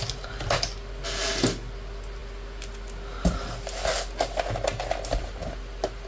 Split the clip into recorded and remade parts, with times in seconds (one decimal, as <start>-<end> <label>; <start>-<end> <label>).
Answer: 0.0-6.1 recorded